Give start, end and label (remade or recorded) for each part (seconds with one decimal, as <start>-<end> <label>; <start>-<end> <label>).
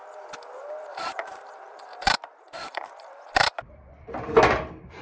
0.0-0.9 recorded; 0.9-3.9 remade; 3.9-5.0 recorded